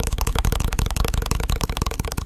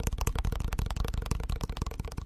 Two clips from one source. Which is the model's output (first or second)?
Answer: first